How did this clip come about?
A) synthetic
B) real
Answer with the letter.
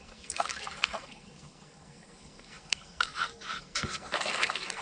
A